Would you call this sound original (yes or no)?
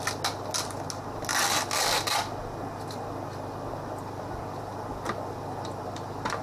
yes